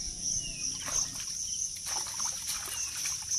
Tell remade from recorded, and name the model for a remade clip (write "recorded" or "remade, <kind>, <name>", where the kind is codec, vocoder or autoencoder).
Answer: recorded